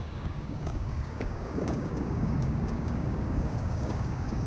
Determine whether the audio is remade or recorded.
remade